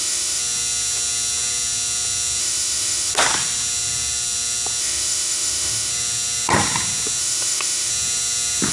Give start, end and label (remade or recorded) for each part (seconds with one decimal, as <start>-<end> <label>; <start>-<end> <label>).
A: 0.0-0.4 remade; 0.4-2.4 recorded; 2.4-3.1 remade; 3.1-4.8 recorded; 4.8-5.9 remade; 5.9-7.2 recorded; 7.2-7.9 remade; 7.9-8.7 recorded